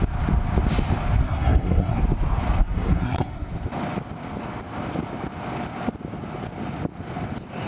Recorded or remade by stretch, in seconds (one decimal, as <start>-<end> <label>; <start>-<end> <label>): 0.0-1.2 recorded; 1.2-2.0 remade; 2.0-2.6 recorded; 2.6-3.5 remade; 3.5-7.7 recorded